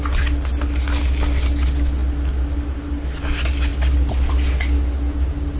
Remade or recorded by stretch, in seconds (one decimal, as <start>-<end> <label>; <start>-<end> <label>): 0.0-5.6 recorded